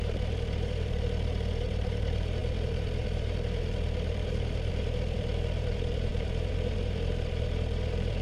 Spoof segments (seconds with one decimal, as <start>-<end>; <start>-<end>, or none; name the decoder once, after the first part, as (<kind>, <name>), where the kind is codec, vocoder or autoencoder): 0.0-8.2 (vocoder, BigVGAN v2)